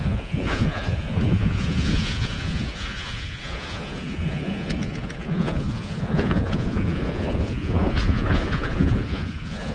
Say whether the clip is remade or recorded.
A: remade